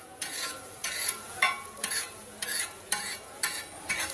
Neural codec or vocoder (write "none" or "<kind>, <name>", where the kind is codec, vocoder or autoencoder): vocoder, Vocos